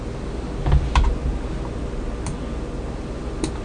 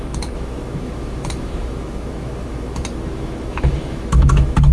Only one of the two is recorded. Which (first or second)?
first